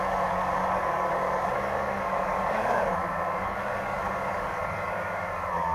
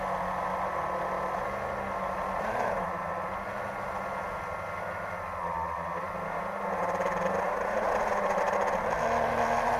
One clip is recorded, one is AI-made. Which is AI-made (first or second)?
first